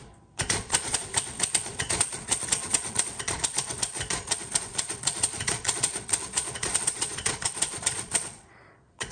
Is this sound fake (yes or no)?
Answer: yes